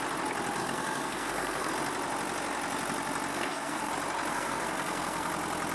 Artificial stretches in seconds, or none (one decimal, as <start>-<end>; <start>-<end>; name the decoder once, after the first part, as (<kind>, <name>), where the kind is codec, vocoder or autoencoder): 0.6-1.7 (codec, SNAC); 3.3-3.9; 4.3-5.3